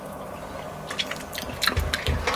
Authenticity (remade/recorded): recorded